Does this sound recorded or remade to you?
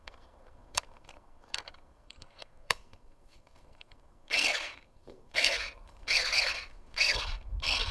remade